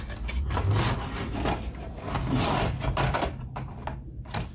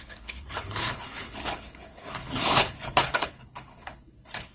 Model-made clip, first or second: second